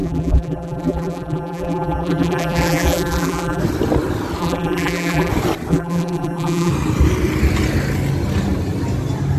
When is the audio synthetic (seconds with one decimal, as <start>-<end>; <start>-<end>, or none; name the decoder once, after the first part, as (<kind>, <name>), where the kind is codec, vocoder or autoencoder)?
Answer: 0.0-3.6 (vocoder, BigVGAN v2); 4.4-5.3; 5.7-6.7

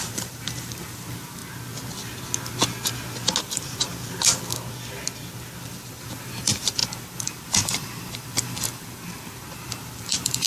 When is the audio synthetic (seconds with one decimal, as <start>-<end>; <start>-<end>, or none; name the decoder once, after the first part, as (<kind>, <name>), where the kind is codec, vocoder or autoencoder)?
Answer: 0.0-1.4 (vocoder, BigVGAN v2); 3.4-3.9; 5.7-10.5

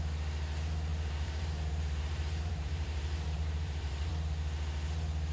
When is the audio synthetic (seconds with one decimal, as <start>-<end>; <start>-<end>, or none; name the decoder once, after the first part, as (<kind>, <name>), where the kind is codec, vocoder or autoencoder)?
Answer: 0.9-4.1 (vocoder, BigVGAN v2)

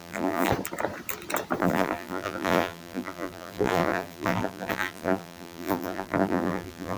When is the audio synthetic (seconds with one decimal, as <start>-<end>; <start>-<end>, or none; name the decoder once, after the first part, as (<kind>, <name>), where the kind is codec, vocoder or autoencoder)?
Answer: 0.0-0.5 (vocoder, BigVGAN v2); 1.6-7.0